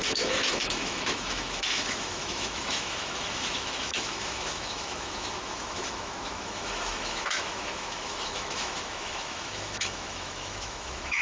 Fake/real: fake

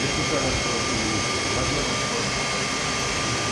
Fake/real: real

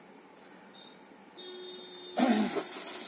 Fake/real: real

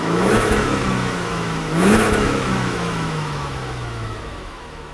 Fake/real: fake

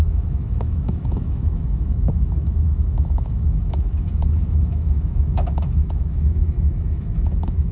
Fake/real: fake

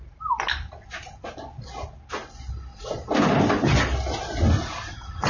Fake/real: real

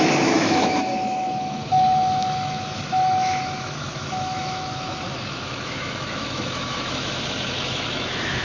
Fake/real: fake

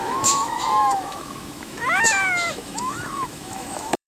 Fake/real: fake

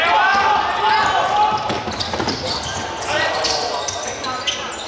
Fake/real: real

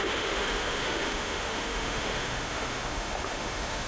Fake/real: fake